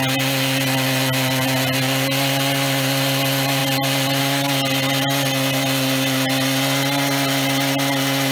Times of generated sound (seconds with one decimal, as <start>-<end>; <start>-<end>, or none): none